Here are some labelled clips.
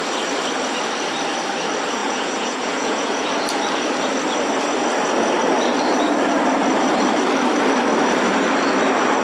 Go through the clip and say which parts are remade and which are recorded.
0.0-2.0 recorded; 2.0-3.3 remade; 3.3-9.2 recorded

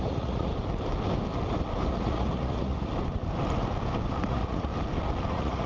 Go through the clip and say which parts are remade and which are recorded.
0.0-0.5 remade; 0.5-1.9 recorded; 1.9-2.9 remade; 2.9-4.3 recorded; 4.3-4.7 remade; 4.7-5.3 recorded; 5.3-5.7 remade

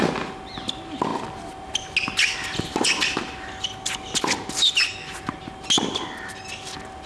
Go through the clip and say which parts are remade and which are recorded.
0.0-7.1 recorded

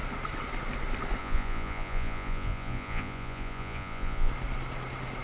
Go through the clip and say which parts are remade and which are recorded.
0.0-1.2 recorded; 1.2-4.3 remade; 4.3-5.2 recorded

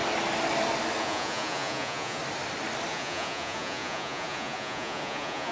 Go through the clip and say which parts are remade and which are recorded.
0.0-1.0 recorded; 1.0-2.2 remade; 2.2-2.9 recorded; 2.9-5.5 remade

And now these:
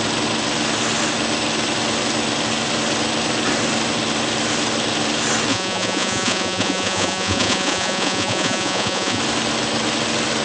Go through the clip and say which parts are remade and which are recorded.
0.0-5.5 recorded; 5.5-9.2 remade; 9.2-10.4 recorded